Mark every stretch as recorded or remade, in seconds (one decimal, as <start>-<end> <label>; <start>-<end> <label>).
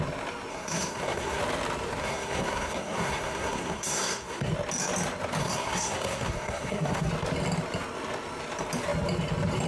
0.0-0.5 recorded; 0.5-1.4 remade; 1.4-2.0 recorded; 2.0-4.5 remade; 4.5-5.4 recorded; 5.4-7.1 remade; 7.1-9.7 recorded